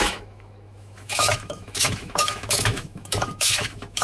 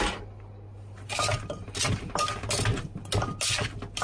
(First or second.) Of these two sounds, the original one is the second